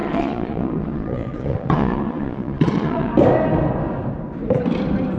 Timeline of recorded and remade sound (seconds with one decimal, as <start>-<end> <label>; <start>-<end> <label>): 0.0-3.1 remade; 3.1-5.2 recorded